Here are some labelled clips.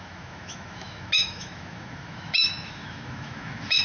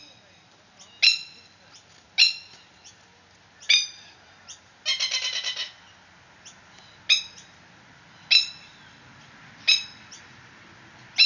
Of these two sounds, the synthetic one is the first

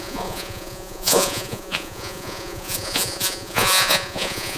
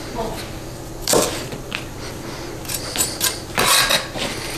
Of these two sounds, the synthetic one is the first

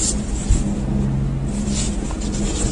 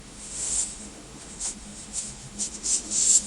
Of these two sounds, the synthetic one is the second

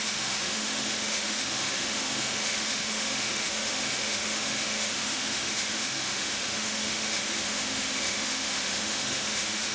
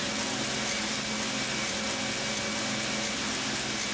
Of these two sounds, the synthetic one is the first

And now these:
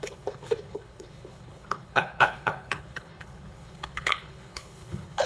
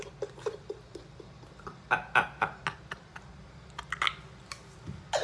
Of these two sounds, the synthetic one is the first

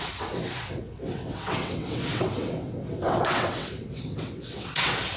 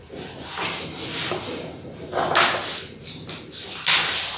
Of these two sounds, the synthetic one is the first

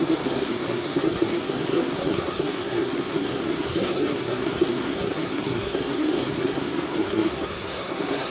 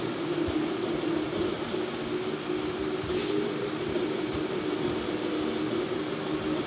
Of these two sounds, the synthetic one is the first